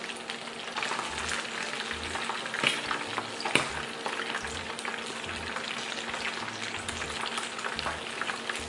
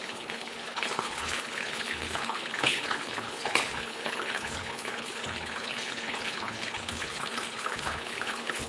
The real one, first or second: first